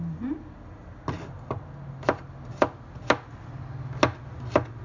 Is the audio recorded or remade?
recorded